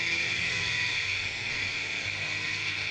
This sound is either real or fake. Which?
fake